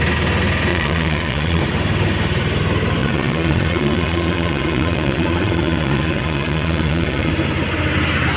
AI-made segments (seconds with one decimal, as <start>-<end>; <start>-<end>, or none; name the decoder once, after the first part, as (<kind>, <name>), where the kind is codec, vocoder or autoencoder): 0.7-1.6 (vocoder, Vocos); 3.0-7.3